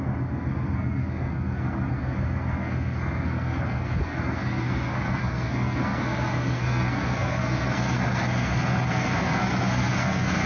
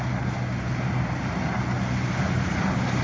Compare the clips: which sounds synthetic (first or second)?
first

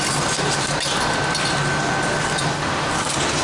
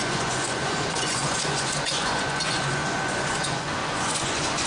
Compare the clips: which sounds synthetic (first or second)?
second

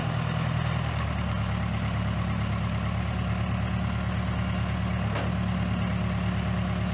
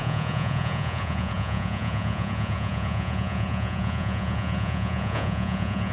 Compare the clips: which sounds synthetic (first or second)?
second